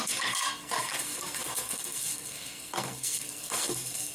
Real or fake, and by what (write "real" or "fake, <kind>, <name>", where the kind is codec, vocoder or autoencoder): fake, codec, SNAC